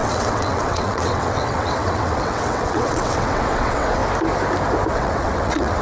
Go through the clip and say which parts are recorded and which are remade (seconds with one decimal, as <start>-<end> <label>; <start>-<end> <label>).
0.0-4.0 remade; 4.0-4.9 recorded; 4.9-5.8 remade